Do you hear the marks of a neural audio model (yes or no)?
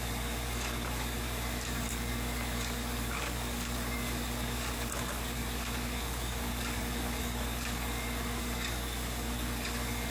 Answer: yes